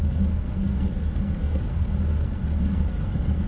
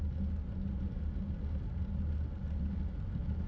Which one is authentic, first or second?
second